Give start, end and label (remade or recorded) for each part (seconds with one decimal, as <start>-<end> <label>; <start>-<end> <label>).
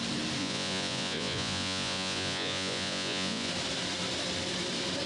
0.0-0.4 recorded; 0.4-3.5 remade; 3.5-5.1 recorded